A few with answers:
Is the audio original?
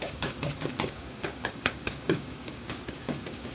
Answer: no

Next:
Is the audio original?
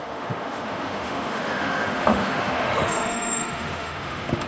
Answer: no